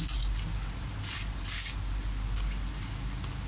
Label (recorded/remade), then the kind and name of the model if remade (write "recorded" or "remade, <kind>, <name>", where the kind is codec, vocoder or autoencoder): recorded